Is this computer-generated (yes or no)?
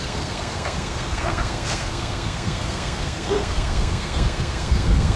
yes